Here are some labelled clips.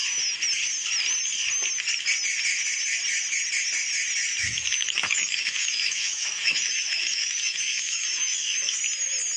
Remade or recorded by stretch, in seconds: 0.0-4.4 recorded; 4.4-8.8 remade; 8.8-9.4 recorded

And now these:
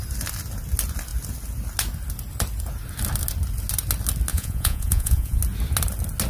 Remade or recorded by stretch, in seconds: 0.0-4.3 recorded; 4.3-5.4 remade; 5.4-6.3 recorded